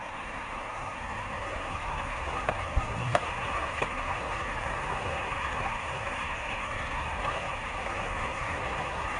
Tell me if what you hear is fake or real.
fake